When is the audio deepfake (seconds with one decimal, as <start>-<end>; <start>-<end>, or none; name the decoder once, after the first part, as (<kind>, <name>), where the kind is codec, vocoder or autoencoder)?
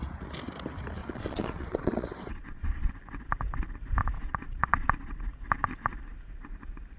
1.0-2.9 (vocoder, Vocos); 4.0-5.2